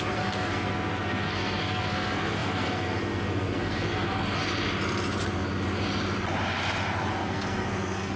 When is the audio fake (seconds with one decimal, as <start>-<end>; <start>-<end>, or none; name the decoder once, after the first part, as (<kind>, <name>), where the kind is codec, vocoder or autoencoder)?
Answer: 0.0-4.4 (codec, SNAC); 7.1-8.2